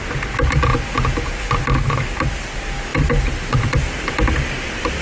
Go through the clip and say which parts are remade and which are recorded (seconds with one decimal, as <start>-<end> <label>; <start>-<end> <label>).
0.0-5.0 recorded